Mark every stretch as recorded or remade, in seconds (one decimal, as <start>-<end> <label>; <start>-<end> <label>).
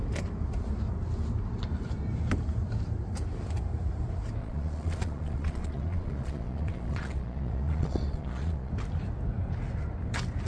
0.0-4.4 recorded; 4.4-8.7 remade; 8.7-10.5 recorded